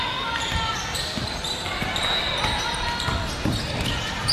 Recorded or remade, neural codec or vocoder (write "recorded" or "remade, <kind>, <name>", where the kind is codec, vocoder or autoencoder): recorded